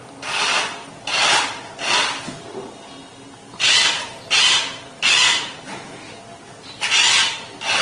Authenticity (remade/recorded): recorded